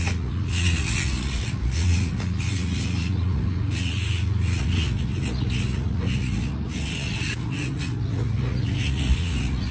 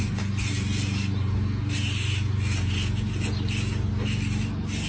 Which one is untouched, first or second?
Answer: second